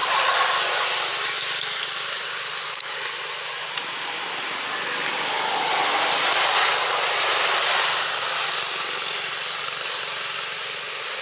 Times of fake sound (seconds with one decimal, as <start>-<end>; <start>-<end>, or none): none